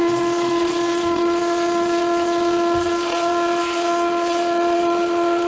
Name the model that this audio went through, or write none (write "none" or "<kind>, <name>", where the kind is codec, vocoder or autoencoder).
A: vocoder, Vocos